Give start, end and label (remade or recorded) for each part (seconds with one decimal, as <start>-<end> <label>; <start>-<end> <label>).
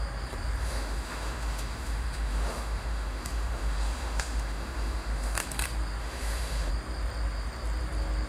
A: 0.0-0.6 recorded; 0.6-5.6 remade; 5.6-6.0 recorded; 6.0-6.7 remade; 6.7-8.3 recorded